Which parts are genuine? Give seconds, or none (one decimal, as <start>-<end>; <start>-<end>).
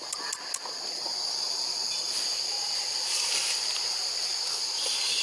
0.0-5.2